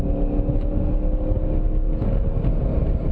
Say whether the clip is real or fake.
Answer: real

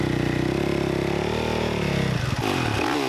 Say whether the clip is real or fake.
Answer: real